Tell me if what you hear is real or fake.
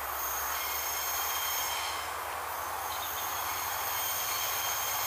real